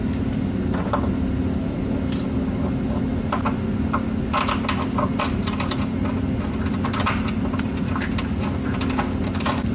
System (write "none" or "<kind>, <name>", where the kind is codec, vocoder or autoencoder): none